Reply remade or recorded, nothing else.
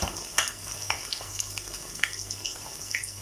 remade